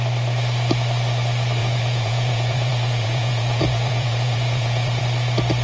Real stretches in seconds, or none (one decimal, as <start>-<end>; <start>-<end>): 0.0-1.6; 5.0-5.6